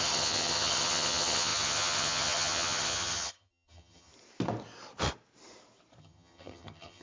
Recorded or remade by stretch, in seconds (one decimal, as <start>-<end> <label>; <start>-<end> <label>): 0.0-4.1 remade; 4.1-6.0 recorded; 6.0-7.0 remade